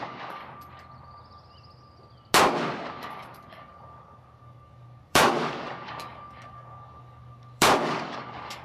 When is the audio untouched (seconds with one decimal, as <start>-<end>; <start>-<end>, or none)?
0.4-2.9

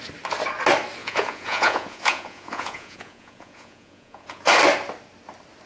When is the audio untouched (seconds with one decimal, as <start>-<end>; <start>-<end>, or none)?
0.0-1.0; 4.4-5.7

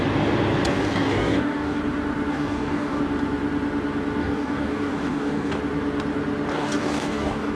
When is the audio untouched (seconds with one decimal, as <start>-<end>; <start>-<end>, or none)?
0.0-0.7; 1.8-2.3; 3.0-4.2; 5.6-6.5